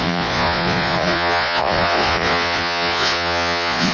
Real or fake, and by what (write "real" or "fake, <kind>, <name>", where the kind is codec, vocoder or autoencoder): fake, vocoder, Vocos